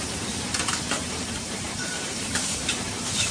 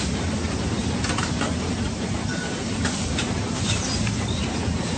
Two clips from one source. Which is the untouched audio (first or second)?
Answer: second